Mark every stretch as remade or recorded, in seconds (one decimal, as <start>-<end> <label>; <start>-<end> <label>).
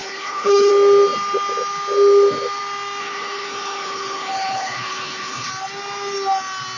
0.0-0.7 remade; 0.7-3.0 recorded; 3.0-5.5 remade; 5.5-6.8 recorded